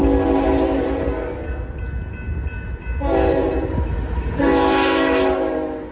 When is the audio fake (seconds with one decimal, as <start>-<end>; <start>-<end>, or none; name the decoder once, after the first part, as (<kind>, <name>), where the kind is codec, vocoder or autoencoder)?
none